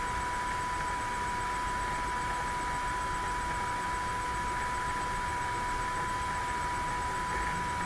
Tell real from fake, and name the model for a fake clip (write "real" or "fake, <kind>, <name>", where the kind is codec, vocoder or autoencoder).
real